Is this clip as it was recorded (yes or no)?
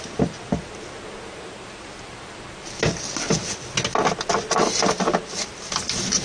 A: yes